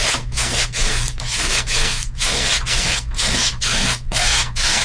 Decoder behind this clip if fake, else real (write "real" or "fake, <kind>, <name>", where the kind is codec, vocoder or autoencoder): fake, codec, SNAC